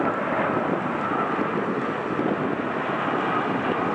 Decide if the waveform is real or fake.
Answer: real